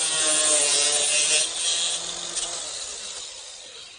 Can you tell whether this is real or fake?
real